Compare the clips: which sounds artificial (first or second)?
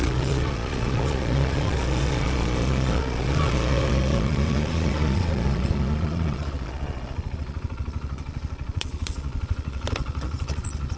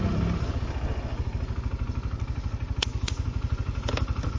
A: first